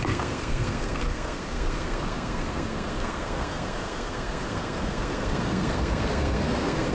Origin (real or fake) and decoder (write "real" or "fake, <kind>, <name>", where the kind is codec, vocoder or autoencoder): fake, codec, SNAC